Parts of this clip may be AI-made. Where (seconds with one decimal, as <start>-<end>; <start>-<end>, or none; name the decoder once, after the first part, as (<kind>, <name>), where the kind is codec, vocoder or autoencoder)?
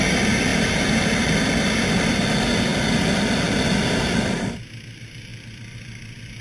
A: none